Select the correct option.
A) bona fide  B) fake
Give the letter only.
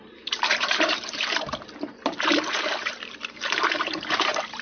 B